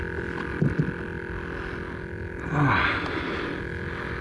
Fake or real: real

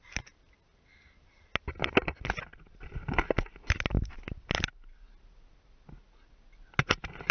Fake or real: real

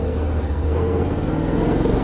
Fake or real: fake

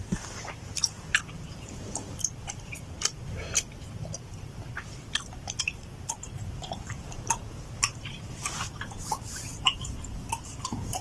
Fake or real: fake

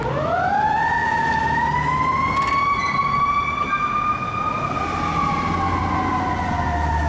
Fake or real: real